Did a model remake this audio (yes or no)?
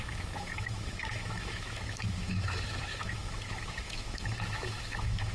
yes